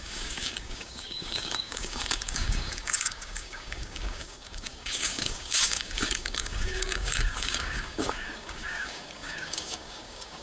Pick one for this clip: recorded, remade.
remade